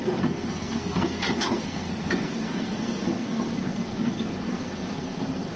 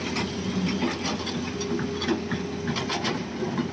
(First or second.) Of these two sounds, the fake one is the first